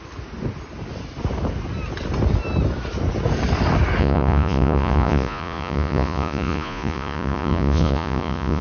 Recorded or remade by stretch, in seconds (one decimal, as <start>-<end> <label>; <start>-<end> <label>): 0.0-4.0 recorded; 4.0-8.6 remade